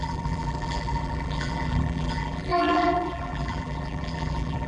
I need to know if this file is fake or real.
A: fake